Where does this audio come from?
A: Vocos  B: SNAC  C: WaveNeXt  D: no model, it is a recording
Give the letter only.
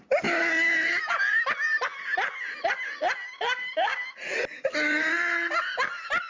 D